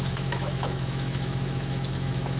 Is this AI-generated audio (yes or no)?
yes